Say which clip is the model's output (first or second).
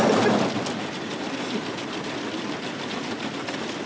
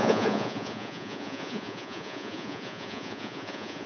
second